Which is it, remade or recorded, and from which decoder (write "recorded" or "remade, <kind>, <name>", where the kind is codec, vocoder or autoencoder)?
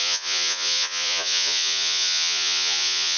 remade, vocoder, Vocos